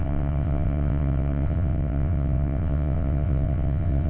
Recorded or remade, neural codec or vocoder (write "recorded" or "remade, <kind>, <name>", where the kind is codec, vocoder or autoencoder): remade, vocoder, WaveNeXt